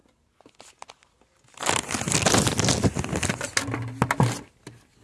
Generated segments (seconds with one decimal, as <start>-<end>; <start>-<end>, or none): none